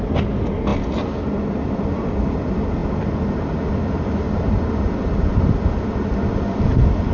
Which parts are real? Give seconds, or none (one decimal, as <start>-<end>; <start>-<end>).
0.0-7.1